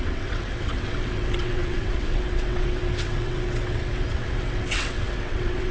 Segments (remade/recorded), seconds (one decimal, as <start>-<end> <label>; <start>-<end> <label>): 0.0-5.7 remade